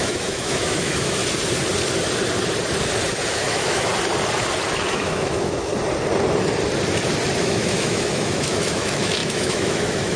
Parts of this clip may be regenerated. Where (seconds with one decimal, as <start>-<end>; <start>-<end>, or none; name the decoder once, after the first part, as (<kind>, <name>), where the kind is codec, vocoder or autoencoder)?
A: 0.0-1.2 (autoencoder, DAC-VAE); 3.3-3.9; 4.9-5.7; 7.4-10.2